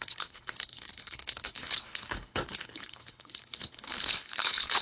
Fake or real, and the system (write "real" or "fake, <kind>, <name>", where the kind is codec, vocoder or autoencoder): fake, codec, HILCodec